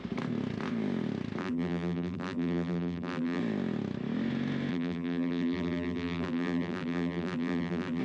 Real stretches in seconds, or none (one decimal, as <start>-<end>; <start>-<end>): 0.0-1.4; 3.4-4.7